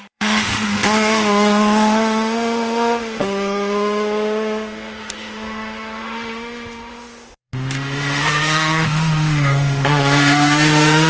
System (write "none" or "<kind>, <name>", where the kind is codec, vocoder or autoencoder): autoencoder, DAC-VAE